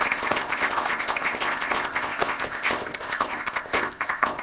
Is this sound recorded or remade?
remade